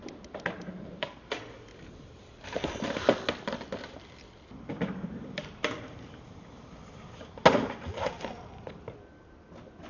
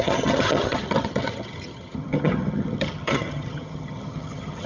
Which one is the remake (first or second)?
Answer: second